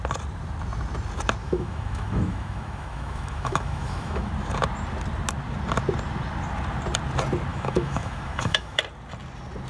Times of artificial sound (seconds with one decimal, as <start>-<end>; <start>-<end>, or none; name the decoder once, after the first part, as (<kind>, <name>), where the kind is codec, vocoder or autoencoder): 1.4-4.3 (autoencoder, DAC-VAE); 7.5-8.8